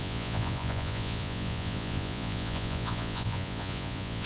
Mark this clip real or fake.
fake